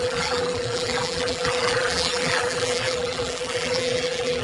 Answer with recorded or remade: remade